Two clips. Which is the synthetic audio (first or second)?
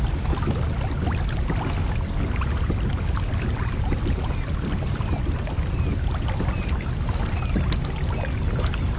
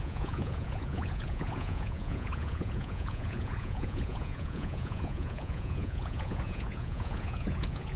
second